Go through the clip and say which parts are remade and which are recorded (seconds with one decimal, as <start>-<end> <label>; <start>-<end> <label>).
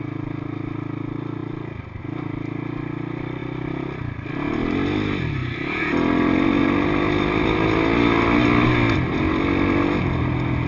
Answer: 0.0-10.7 recorded